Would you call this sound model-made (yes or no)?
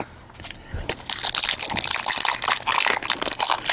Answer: no